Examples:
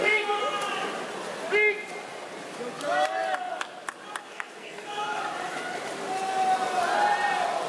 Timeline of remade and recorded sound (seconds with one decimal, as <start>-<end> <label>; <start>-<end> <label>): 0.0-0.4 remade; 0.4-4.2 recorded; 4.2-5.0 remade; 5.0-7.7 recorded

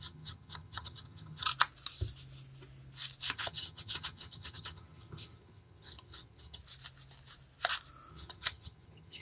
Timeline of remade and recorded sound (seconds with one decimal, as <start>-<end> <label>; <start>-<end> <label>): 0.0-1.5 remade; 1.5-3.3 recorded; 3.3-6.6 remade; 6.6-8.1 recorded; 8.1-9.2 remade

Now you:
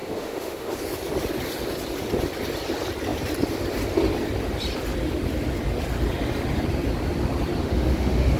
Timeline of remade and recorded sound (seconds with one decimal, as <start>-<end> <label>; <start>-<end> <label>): 0.0-0.7 remade; 0.7-7.6 recorded; 7.6-8.4 remade

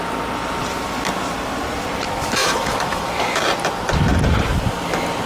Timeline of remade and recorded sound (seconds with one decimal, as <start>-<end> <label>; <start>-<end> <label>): 0.0-2.4 recorded; 2.4-3.4 remade; 3.4-5.3 recorded

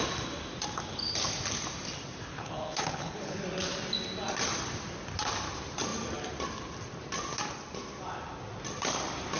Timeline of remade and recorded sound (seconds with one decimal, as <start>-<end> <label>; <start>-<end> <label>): 0.0-2.3 recorded; 2.3-3.4 remade; 3.4-9.4 recorded

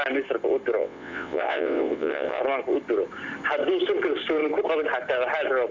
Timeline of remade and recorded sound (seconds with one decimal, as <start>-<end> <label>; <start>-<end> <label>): 0.0-0.8 recorded; 0.8-2.4 remade; 2.4-5.7 recorded

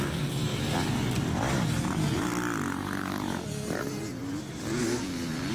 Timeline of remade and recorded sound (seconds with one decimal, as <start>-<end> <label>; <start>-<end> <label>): 0.0-5.5 recorded